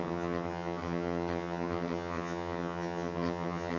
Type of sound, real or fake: fake